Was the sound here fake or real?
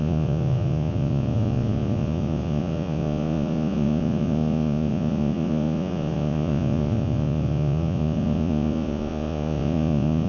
fake